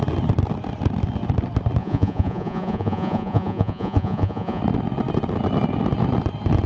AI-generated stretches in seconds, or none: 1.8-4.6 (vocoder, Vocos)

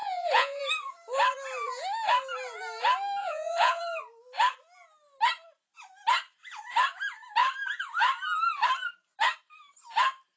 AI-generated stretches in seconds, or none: 0.0-0.6 (vocoder, Vocos); 3.2-3.8

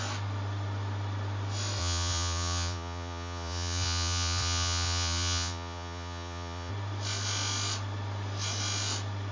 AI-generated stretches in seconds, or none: 1.8-6.7 (vocoder, Vocos)

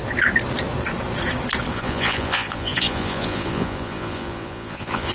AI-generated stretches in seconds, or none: 1.7-5.1 (vocoder, Vocos)

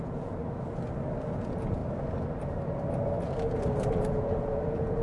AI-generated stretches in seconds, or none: 0.0-0.4 (vocoder, Vocos); 1.4-1.8; 4.0-5.0

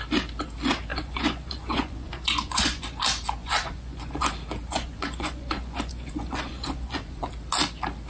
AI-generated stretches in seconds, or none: 0.9-3.0 (vocoder, Vocos); 3.4-4.3; 4.7-7.3

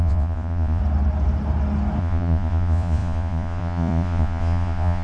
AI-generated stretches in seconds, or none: 0.0-0.8 (vocoder, Vocos); 2.0-5.0